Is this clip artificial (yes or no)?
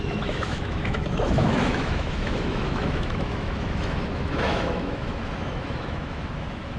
yes